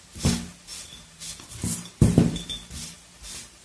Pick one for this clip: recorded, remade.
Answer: recorded